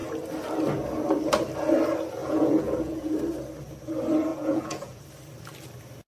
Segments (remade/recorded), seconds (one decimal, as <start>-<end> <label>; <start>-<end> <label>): 0.0-2.2 recorded; 2.2-3.2 remade; 3.2-4.3 recorded; 4.3-5.0 remade; 5.0-6.1 recorded